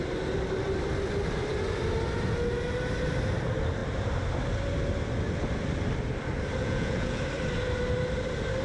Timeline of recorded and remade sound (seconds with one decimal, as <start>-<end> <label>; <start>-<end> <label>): 0.0-6.6 recorded; 6.6-7.2 remade; 7.2-8.6 recorded